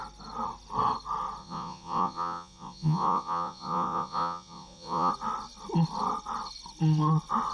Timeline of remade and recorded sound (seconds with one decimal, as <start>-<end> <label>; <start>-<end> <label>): 0.0-1.4 recorded; 1.4-5.1 remade; 5.1-7.5 recorded